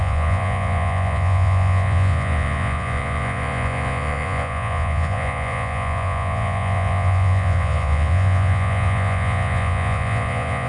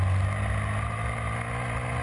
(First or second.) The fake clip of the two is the first